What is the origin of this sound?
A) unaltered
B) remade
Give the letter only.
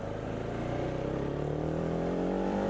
B